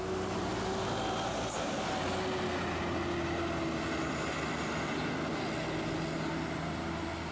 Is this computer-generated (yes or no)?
no